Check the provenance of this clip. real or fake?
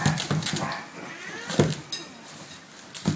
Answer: real